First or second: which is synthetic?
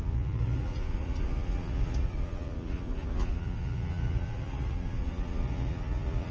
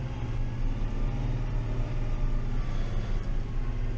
first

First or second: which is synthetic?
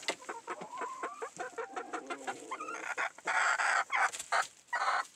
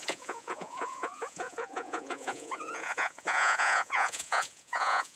second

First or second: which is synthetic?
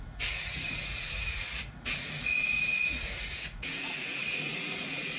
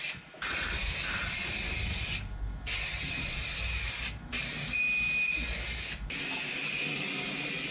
first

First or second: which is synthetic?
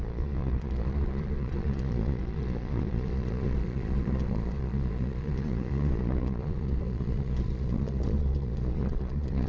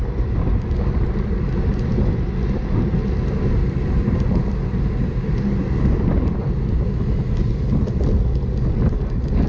first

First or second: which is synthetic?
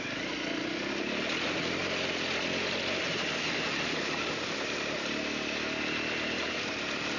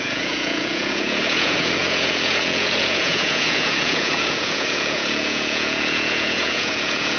second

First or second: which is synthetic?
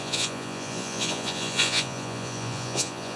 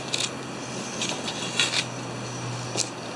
first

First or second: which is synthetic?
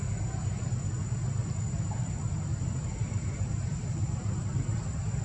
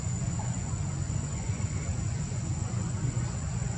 second